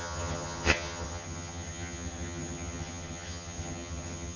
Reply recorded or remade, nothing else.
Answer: remade